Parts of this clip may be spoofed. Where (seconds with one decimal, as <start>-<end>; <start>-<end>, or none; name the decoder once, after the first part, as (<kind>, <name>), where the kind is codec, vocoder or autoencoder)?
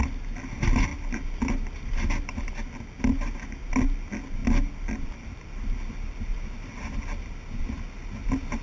none